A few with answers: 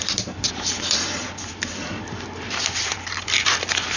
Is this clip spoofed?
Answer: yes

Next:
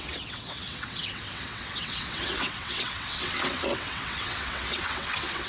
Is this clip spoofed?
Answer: yes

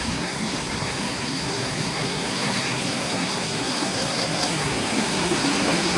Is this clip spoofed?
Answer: yes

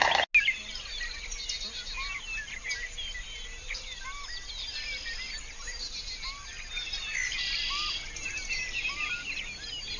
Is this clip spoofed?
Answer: no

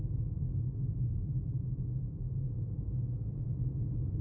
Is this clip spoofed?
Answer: yes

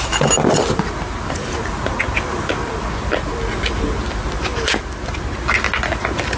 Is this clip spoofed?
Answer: no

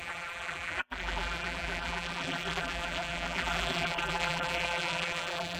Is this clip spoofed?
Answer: yes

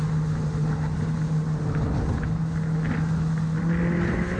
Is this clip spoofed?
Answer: no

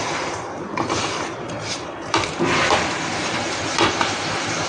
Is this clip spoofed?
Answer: yes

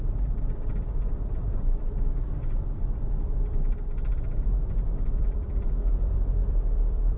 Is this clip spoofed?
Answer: yes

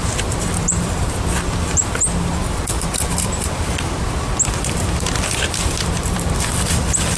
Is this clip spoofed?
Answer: yes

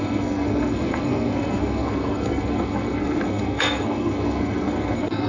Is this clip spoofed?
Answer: yes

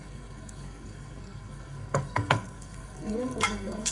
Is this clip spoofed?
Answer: yes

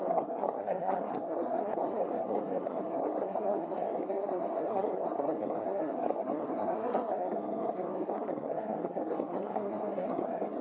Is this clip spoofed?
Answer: yes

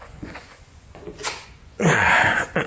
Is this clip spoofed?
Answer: yes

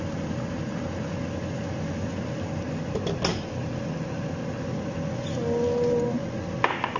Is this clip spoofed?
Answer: no